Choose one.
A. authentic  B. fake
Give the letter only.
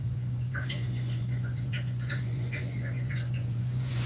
B